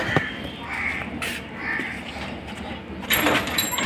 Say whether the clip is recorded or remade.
remade